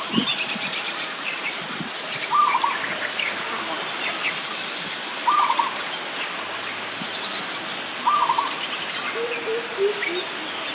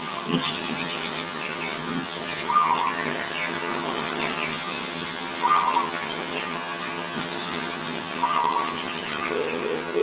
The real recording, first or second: first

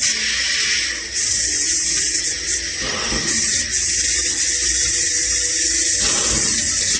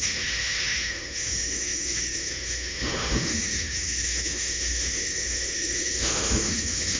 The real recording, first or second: first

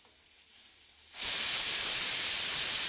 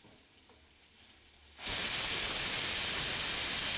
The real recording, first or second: second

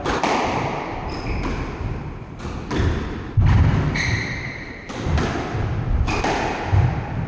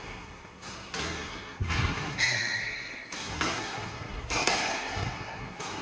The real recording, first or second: first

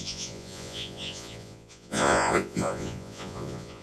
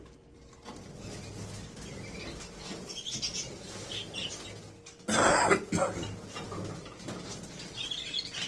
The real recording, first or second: second